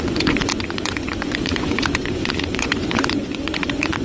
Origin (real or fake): fake